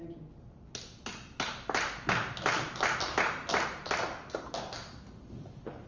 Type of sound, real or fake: real